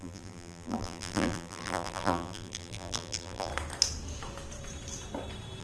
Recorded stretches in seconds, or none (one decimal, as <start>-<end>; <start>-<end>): 3.5-5.6